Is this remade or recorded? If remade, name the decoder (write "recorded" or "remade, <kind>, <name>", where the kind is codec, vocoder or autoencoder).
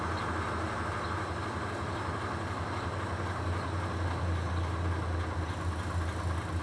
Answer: recorded